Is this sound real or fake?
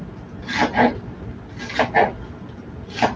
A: real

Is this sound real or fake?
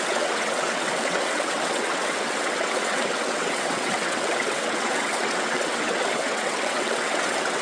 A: fake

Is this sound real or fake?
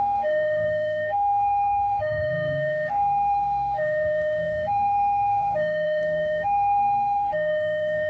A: fake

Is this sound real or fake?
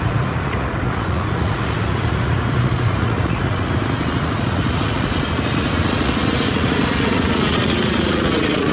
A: fake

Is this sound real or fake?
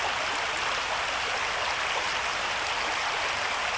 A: real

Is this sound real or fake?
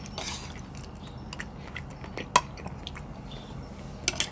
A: real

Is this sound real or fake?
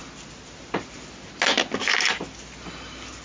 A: real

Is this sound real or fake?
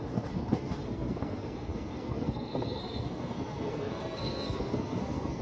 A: fake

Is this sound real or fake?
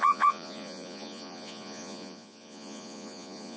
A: fake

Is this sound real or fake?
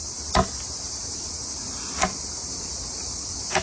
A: real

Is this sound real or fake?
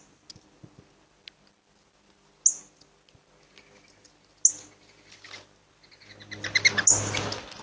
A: real